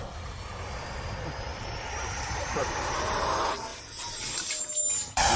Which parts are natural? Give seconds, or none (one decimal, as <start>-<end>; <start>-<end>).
0.0-0.5; 1.1-1.5; 3.1-3.7; 4.3-5.4